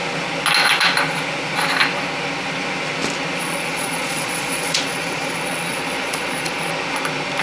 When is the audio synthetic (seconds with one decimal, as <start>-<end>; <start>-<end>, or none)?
3.4-6.7